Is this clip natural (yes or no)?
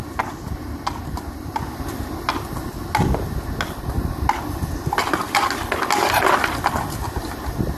yes